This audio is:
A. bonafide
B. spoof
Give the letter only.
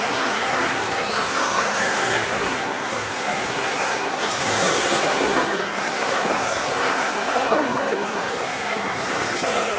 B